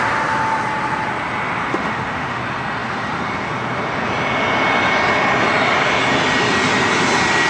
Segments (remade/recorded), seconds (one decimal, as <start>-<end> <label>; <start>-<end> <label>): 0.0-1.7 recorded; 1.7-2.4 remade; 2.4-7.5 recorded